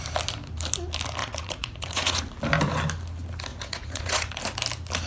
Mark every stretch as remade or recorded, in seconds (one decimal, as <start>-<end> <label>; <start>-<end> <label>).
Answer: 0.0-1.2 recorded; 1.2-2.2 remade; 2.2-3.5 recorded; 3.5-4.4 remade; 4.4-5.1 recorded